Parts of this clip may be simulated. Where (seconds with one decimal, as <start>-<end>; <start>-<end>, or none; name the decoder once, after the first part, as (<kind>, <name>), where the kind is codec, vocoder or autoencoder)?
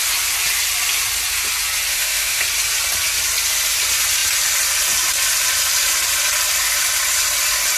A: 1.9-2.4 (autoencoder, DAC-VAE)